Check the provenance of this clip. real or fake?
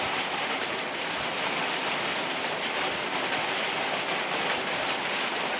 real